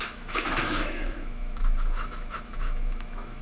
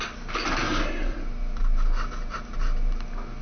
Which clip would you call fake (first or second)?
first